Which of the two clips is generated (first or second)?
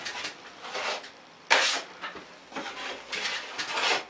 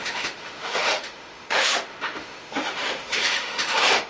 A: second